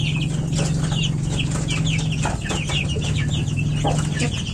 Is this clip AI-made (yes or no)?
no